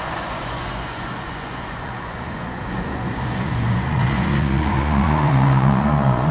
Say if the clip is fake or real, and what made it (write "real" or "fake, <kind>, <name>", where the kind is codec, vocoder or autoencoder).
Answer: fake, vocoder, Vocos